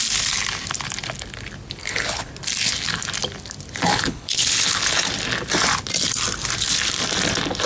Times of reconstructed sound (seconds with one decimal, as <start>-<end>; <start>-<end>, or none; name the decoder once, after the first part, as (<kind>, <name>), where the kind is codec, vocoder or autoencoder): 1.8-2.3 (codec, HILCodec); 3.9-5.1